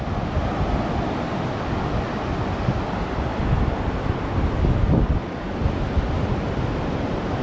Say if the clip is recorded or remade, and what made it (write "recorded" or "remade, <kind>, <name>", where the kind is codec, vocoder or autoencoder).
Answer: recorded